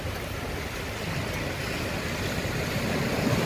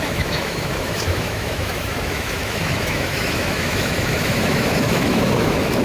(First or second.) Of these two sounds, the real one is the first